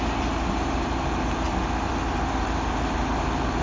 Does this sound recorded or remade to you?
recorded